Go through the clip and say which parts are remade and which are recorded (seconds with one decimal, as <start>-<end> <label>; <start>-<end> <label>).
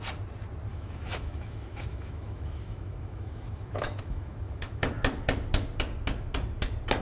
0.0-0.7 recorded; 0.7-4.9 remade; 4.9-7.0 recorded